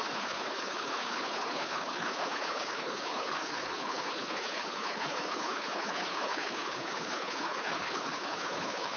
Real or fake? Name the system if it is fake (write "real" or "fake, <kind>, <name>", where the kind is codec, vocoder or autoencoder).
fake, codec, HILCodec